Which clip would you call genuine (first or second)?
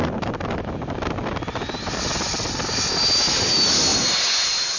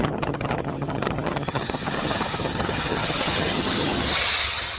first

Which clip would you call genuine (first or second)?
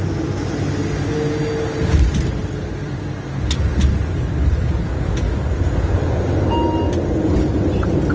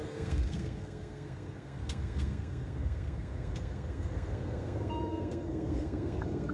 first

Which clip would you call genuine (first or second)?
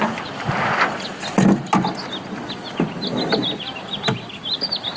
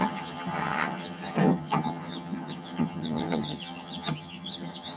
first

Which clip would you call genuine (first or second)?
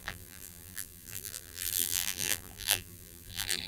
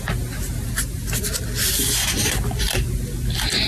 second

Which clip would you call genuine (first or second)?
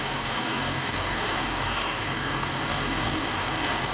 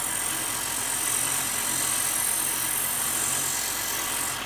second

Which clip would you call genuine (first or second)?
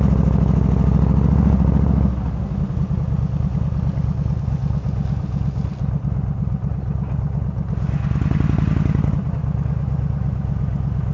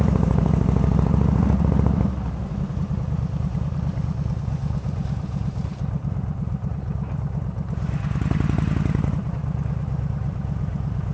first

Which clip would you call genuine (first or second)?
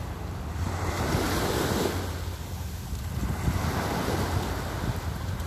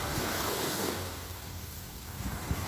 first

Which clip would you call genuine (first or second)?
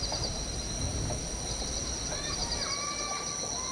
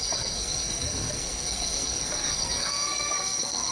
first